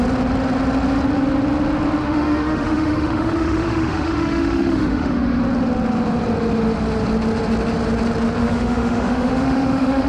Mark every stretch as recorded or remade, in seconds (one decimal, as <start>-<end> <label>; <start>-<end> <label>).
0.0-2.0 recorded; 2.0-5.4 remade; 5.4-8.4 recorded; 8.4-10.1 remade